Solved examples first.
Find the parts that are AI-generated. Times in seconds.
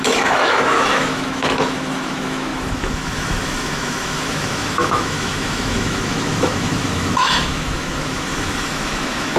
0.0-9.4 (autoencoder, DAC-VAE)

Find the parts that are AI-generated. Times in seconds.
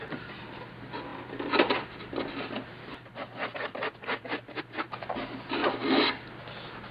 none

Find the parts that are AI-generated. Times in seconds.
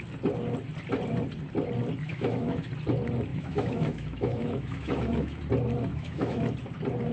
2.1-2.7 (autoencoder, DAC-VAE); 3.3-5.4; 5.9-6.4